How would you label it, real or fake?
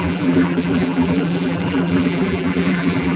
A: fake